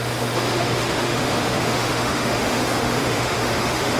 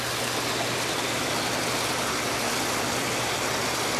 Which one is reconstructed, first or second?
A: first